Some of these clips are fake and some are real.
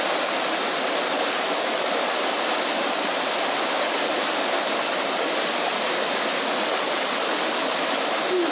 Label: real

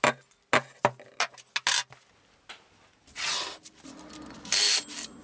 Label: real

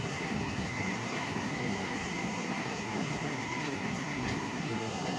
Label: fake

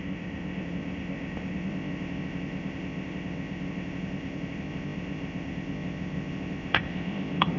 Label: fake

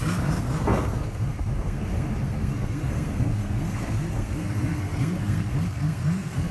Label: fake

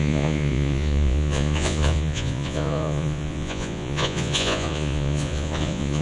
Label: fake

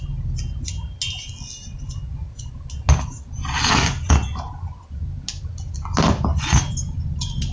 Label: real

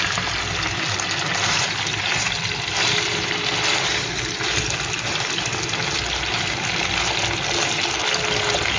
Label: real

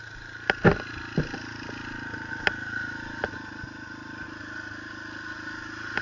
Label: real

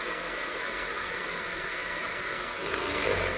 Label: fake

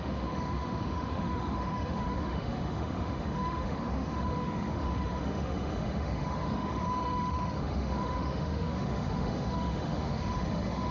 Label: fake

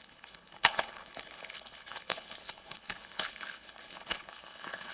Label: fake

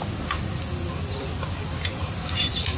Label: real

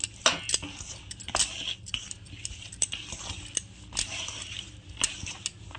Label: real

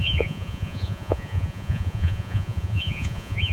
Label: fake